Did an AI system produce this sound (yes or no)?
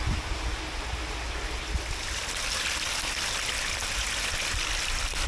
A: no